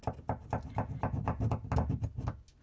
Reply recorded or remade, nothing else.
recorded